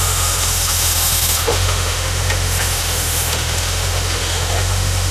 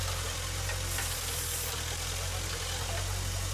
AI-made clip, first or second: first